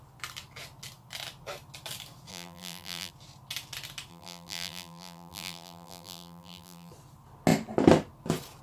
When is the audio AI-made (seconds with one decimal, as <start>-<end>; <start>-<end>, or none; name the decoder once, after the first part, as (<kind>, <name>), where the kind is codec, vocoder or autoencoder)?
2.3-3.1 (vocoder, BigVGAN v2); 4.1-6.9